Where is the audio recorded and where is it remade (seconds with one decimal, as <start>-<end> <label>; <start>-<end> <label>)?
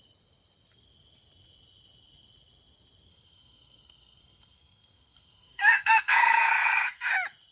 0.0-3.1 recorded; 3.1-7.1 remade; 7.1-7.5 recorded